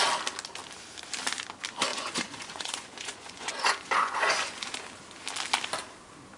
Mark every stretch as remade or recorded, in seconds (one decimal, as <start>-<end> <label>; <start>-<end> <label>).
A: 0.0-1.9 recorded; 1.9-4.7 remade; 4.7-6.4 recorded